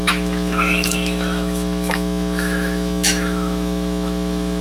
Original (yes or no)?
no